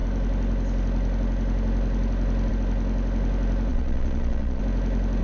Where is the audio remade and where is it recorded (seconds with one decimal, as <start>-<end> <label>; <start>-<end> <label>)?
0.0-3.7 recorded; 3.7-4.6 remade; 4.6-5.2 recorded